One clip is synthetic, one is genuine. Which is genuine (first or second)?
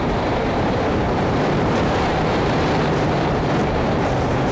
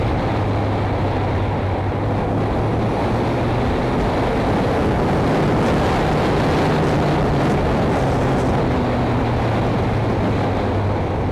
second